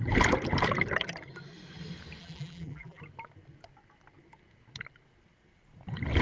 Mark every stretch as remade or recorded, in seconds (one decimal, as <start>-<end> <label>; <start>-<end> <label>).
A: 0.0-2.2 recorded; 2.2-3.0 remade; 3.0-6.2 recorded